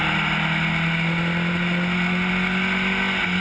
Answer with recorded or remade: recorded